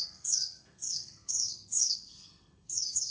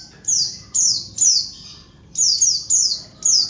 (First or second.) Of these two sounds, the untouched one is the second